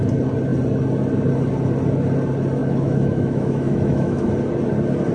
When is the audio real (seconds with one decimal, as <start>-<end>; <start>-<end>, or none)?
0.0-2.6; 4.3-5.1